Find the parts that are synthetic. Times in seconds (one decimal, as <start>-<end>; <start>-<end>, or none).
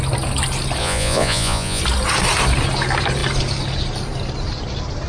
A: 0.8-1.8